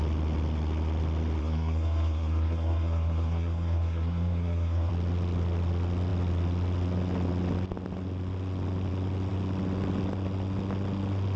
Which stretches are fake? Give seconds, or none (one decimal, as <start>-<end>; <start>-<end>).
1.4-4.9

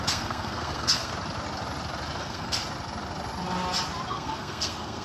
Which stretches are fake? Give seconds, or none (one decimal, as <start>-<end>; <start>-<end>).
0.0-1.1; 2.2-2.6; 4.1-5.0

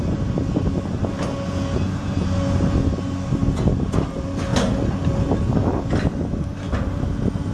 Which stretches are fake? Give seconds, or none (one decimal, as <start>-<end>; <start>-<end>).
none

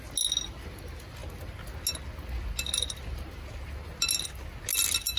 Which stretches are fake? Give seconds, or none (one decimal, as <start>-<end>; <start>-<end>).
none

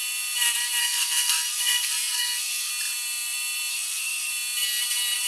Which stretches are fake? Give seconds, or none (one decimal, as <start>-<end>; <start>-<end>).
0.8-2.7; 3.7-4.3

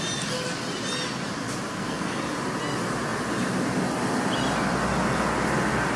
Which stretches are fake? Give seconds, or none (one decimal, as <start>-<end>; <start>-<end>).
1.7-2.2